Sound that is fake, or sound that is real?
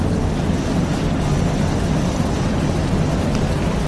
real